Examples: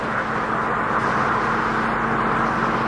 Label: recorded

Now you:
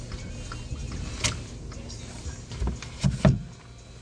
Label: recorded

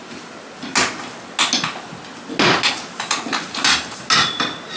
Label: recorded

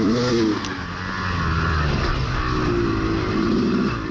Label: recorded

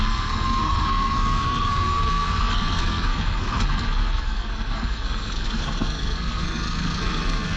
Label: remade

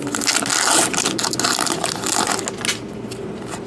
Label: recorded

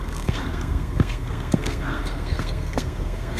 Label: remade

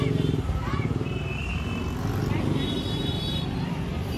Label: recorded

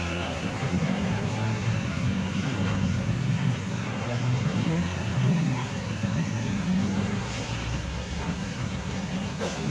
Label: remade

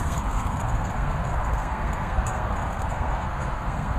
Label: remade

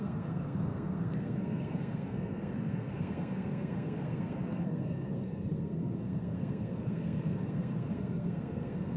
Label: remade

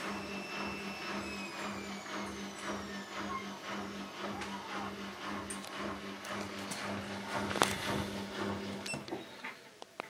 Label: recorded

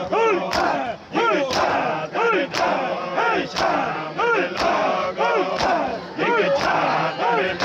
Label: recorded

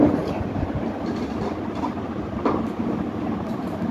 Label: recorded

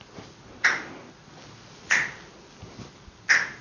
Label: recorded